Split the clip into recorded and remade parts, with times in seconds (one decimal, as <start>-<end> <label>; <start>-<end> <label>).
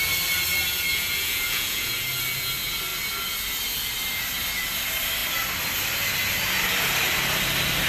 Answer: 0.0-0.9 recorded; 0.9-1.9 remade; 1.9-7.9 recorded